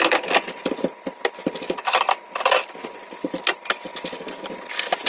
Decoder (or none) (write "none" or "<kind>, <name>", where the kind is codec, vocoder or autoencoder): none